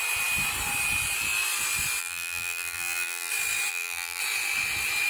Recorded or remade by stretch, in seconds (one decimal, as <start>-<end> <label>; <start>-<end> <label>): 0.0-2.0 recorded; 2.0-3.3 remade; 3.3-3.7 recorded; 3.7-4.2 remade; 4.2-5.1 recorded